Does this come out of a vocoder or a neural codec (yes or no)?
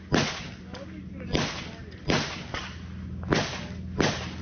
no